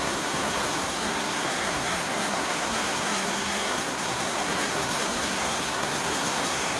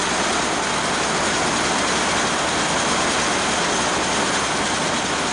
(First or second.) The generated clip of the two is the first